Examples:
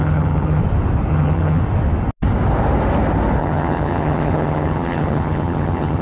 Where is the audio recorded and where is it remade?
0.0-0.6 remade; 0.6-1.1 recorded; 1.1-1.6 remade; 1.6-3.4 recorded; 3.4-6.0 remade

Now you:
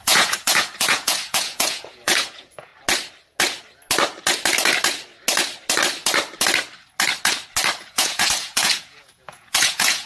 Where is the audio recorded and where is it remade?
0.0-2.7 remade; 2.7-7.8 recorded; 7.8-10.1 remade

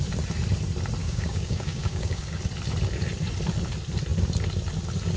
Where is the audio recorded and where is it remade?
0.0-1.0 recorded; 1.0-2.4 remade; 2.4-5.2 recorded

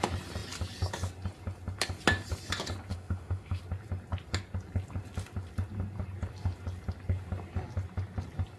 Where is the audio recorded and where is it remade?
0.0-2.9 recorded; 2.9-3.6 remade; 3.6-8.6 recorded

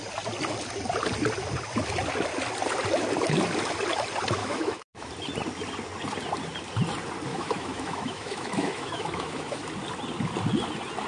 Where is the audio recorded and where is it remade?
0.0-4.4 recorded; 4.4-5.1 remade; 5.1-7.3 recorded; 7.3-9.7 remade; 9.7-11.1 recorded

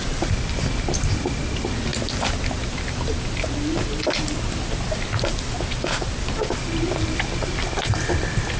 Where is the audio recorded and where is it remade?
0.0-8.6 recorded